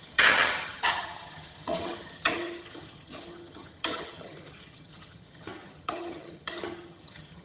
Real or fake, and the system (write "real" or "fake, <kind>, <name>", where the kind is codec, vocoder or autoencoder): fake, vocoder, HiFi-GAN